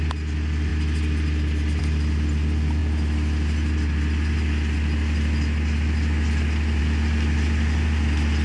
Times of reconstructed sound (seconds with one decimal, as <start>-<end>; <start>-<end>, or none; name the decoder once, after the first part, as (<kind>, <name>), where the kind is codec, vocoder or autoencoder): none